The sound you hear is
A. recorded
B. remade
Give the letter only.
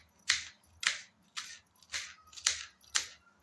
A